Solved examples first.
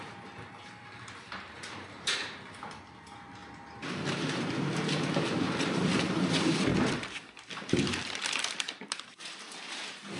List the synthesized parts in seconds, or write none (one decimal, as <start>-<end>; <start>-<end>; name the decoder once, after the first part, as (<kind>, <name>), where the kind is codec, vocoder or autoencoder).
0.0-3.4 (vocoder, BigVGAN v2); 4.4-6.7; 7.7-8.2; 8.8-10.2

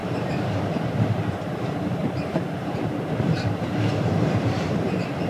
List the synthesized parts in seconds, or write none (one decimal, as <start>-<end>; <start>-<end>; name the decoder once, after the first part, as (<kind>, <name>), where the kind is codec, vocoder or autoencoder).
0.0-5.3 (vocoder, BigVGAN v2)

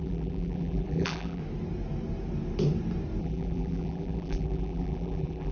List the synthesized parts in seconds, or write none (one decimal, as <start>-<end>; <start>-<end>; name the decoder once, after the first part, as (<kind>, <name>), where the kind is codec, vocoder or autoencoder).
0.0-1.4 (vocoder, BigVGAN v2); 3.2-5.5